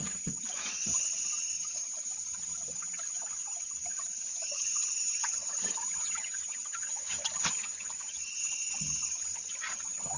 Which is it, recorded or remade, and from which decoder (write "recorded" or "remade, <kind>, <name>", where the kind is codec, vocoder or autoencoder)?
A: remade, vocoder, HiFi-GAN